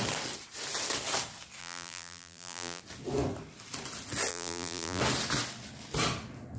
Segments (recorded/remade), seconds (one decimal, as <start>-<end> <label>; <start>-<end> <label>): 0.0-1.6 recorded; 1.6-2.8 remade; 2.8-4.3 recorded; 4.3-5.0 remade; 5.0-6.6 recorded

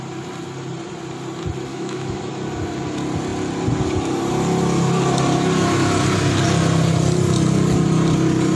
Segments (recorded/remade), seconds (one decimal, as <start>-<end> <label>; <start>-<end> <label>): 0.0-1.7 recorded; 1.7-2.3 remade; 2.3-8.6 recorded

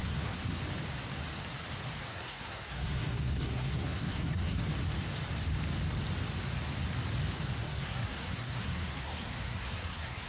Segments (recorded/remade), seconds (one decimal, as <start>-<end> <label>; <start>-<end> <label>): 0.0-0.6 remade; 0.6-2.0 recorded; 2.0-4.6 remade; 4.6-7.6 recorded; 7.6-10.3 remade

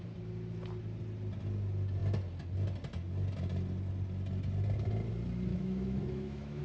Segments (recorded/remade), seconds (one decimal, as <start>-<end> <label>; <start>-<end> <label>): 0.0-5.5 recorded; 5.5-6.6 remade

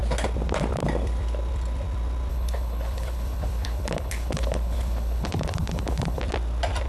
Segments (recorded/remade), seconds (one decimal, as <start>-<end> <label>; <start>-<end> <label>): 0.0-2.3 recorded; 2.3-6.2 remade; 6.2-6.9 recorded

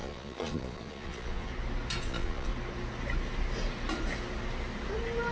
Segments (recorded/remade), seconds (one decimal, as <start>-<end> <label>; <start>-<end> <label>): 0.0-1.5 remade; 1.5-2.0 recorded; 2.0-2.5 remade; 2.5-5.3 recorded